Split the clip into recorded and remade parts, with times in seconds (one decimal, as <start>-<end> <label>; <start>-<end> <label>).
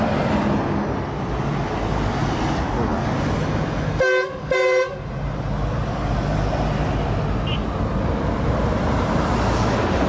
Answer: 0.0-10.1 recorded